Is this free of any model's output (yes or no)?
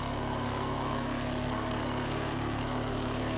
no